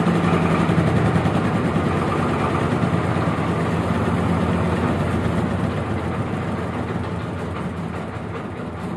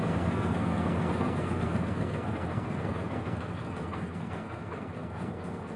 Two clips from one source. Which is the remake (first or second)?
second